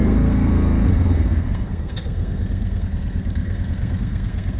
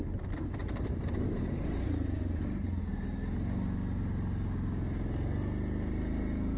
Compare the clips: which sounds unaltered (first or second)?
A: second